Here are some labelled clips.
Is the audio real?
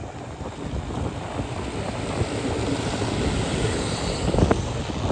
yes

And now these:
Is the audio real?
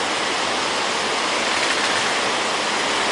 yes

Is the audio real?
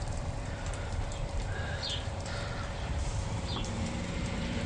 no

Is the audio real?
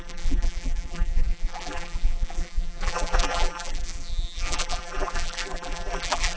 no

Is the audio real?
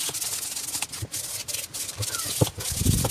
yes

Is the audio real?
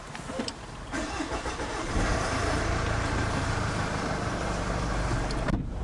no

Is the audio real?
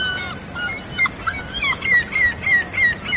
yes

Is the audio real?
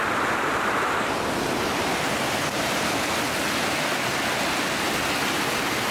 yes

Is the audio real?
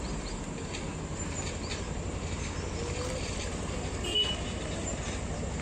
yes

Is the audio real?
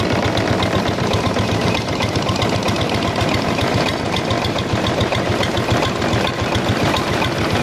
yes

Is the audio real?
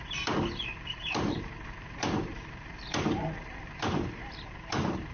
no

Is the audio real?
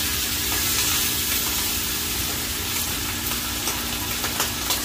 yes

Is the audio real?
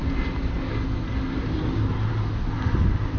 yes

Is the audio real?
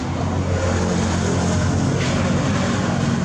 yes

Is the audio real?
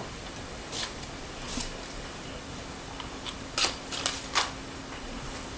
yes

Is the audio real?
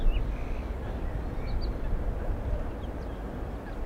yes